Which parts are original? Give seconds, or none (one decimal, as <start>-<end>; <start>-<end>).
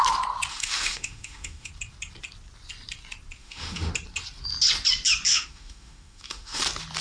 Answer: 0.0-0.5; 1.7-3.4; 3.9-5.3; 6.6-7.0